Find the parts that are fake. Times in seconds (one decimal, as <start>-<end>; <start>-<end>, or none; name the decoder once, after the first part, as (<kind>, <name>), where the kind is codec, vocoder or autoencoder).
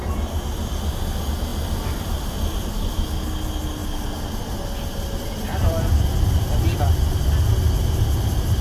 1.5-2.7 (vocoder, BigVGAN v2); 5.5-6.8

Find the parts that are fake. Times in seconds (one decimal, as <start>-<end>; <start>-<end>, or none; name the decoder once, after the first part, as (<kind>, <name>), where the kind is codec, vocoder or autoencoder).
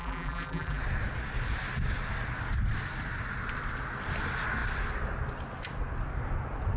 0.0-0.8 (vocoder, BigVGAN v2)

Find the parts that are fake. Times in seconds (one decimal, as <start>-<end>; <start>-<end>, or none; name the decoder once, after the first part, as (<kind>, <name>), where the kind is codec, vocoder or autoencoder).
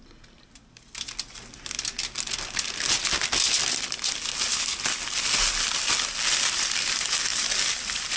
7.3-8.2 (vocoder, BigVGAN v2)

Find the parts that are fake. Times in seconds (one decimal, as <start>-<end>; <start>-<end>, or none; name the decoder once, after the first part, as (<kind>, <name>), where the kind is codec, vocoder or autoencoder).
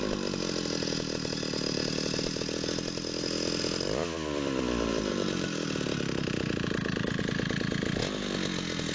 4.9-7.2 (vocoder, BigVGAN v2)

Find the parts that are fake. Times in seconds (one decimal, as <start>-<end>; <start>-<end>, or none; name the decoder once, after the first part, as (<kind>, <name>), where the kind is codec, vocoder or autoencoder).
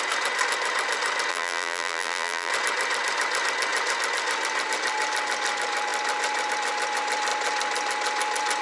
1.3-2.5 (vocoder, BigVGAN v2)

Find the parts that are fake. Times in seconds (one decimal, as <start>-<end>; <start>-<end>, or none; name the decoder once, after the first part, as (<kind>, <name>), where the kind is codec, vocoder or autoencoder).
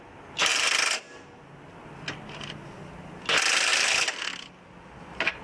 3.7-4.2 (vocoder, BigVGAN v2)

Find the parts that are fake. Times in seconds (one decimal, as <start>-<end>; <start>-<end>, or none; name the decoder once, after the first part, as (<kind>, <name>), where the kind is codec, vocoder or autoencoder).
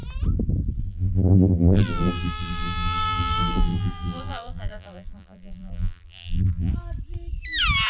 0.8-6.7 (vocoder, BigVGAN v2)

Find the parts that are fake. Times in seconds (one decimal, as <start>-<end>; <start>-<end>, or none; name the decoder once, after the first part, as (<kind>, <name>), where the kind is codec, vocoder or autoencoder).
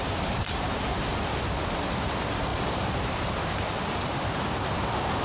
0.0-1.1 (vocoder, BigVGAN v2); 2.0-5.2